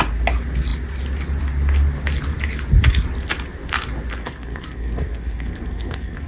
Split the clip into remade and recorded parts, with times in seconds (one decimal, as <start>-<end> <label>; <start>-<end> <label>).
0.0-4.2 recorded; 4.2-6.3 remade